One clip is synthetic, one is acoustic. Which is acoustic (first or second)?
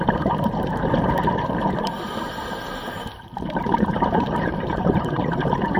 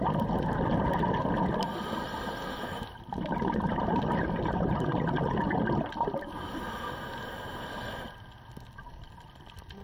second